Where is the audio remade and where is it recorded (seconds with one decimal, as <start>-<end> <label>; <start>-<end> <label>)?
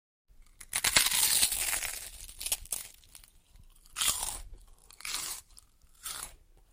0.0-4.8 recorded; 4.8-6.7 remade